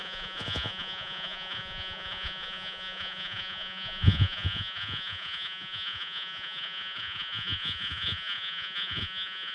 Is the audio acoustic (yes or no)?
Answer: no